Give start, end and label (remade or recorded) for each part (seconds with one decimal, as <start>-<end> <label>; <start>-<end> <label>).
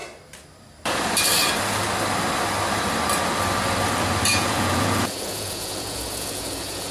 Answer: 0.0-4.3 recorded; 4.3-6.9 remade